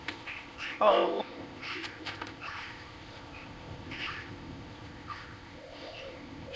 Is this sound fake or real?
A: fake